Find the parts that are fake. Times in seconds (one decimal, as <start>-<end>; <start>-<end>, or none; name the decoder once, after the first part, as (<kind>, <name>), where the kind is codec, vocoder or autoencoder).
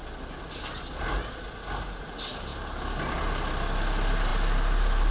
none